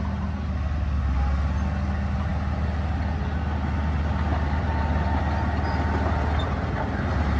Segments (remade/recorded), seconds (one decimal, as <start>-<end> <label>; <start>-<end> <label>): 0.0-7.4 recorded